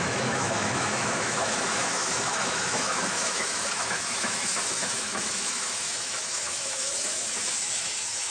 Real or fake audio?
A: fake